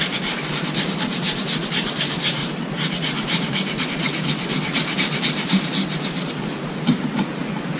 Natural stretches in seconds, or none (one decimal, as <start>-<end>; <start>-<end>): 0.0-2.4; 3.8-7.8